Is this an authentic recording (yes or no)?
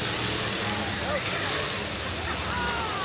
yes